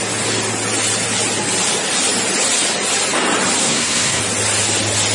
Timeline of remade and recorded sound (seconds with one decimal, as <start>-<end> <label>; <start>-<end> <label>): 0.0-3.6 recorded; 3.6-4.2 remade; 4.2-5.1 recorded